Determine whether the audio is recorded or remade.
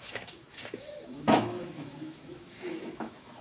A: remade